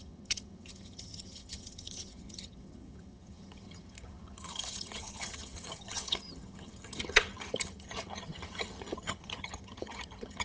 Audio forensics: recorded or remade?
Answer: remade